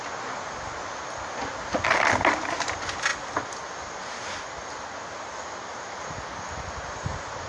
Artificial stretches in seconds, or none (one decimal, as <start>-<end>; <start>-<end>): none